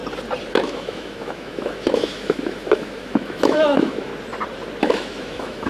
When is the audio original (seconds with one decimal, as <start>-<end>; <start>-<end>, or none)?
0.0-0.5; 4.1-4.8